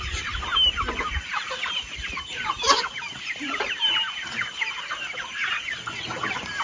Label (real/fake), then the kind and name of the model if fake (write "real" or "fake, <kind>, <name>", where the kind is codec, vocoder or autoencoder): fake, vocoder, BigVGAN v2